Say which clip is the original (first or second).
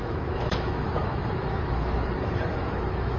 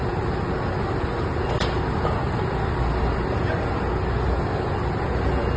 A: second